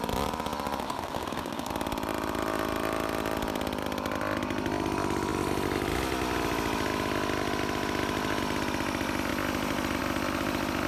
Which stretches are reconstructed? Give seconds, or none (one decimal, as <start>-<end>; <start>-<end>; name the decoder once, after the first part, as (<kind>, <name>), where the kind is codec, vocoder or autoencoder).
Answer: 0.8-1.7 (codec, SNAC)